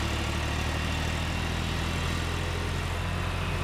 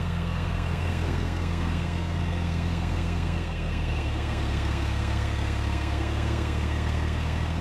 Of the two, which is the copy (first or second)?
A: second